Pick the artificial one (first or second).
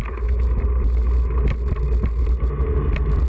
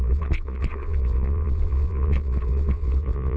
second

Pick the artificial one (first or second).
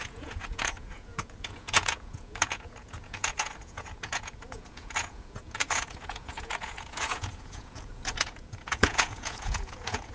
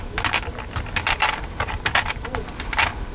first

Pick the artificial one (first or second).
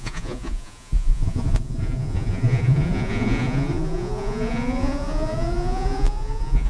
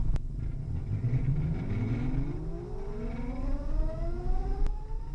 first